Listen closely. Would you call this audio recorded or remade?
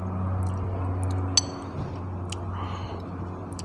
recorded